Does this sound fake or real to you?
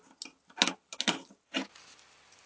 real